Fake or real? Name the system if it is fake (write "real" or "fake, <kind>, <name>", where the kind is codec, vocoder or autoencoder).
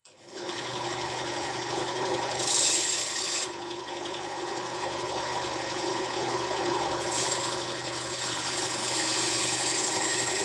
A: fake, codec, HILCodec